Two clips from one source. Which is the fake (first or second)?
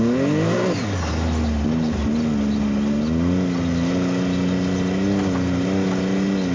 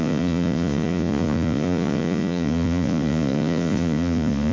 second